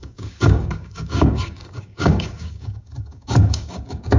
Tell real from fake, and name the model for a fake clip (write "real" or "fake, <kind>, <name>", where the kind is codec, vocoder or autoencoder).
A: fake, codec, DAC